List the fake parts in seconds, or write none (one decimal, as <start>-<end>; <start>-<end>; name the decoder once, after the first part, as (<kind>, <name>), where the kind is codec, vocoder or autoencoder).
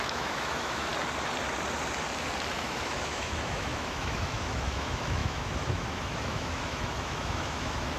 0.0-0.9 (autoencoder, DAC-VAE); 2.5-8.0